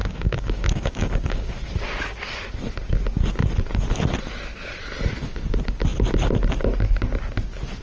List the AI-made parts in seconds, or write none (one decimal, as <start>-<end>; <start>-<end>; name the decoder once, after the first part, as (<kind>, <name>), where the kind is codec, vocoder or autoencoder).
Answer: 0.0-1.6 (codec, DAC)